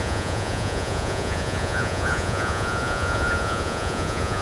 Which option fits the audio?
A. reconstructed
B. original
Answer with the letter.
A